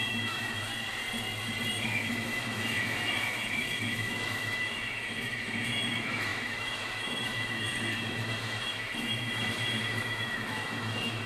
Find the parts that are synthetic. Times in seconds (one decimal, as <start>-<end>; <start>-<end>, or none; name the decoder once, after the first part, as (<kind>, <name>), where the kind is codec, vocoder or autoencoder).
0.0-0.7 (autoencoder, DAC-VAE); 1.8-11.3